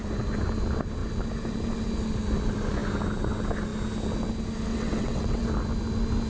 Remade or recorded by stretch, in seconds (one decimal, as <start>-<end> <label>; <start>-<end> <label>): 0.0-4.7 recorded; 4.7-5.5 remade; 5.5-6.3 recorded